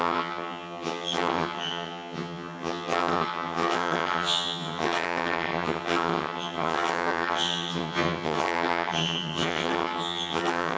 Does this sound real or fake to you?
fake